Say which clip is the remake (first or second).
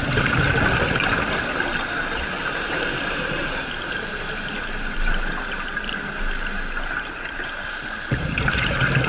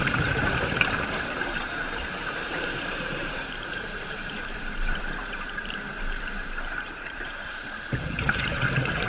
second